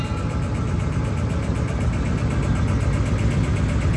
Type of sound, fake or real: real